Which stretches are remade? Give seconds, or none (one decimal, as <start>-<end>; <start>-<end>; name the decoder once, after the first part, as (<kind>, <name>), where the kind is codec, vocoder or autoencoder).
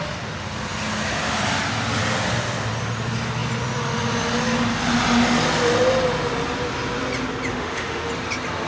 7.5-8.1 (autoencoder, DAC-VAE)